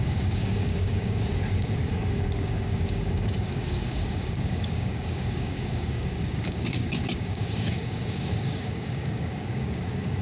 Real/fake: fake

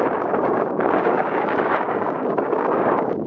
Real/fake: fake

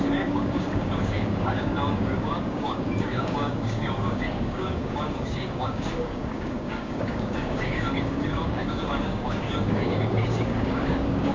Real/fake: fake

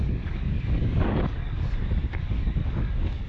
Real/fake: fake